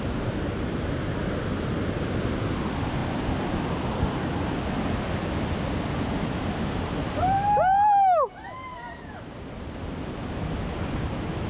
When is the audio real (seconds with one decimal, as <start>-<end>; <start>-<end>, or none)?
0.0-11.5